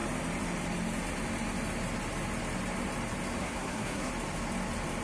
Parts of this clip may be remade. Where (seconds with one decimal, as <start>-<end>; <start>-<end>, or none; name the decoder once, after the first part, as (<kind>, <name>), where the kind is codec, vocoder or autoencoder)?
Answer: 3.4-4.1 (codec, SNAC)